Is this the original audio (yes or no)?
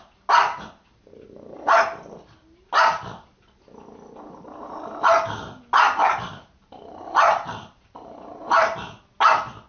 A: yes